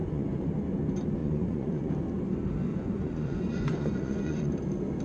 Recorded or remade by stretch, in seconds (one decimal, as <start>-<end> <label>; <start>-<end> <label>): 0.0-0.5 remade; 0.5-1.2 recorded; 1.2-1.9 remade; 1.9-2.7 recorded; 2.7-4.5 remade; 4.5-5.0 recorded